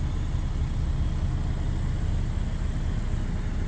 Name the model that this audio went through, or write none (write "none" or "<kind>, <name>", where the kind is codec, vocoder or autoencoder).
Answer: none